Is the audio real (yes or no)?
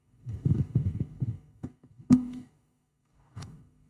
no